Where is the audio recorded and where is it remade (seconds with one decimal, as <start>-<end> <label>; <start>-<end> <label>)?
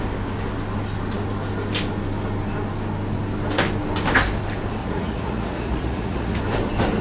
0.0-4.8 recorded; 4.8-6.4 remade; 6.4-7.0 recorded